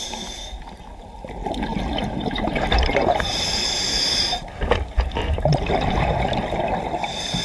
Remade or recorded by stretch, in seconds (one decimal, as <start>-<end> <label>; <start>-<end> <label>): 0.0-1.7 recorded; 1.7-5.5 remade; 5.5-7.4 recorded

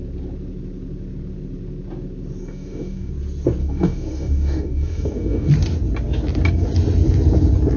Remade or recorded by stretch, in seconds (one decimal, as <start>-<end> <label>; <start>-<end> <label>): 0.0-2.4 recorded; 2.4-3.1 remade; 3.1-3.6 recorded; 3.6-5.5 remade; 5.5-7.8 recorded